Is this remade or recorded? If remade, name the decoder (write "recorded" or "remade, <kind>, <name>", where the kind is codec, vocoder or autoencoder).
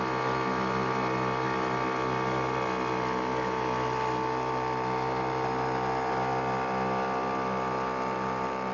recorded